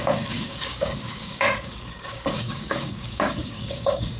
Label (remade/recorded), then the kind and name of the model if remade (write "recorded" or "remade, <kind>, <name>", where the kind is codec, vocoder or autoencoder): remade, codec, DAC